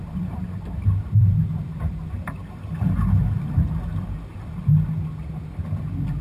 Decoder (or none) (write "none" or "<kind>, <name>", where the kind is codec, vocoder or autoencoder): none